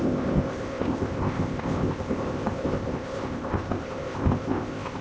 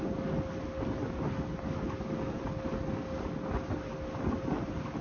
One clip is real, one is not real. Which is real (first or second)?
second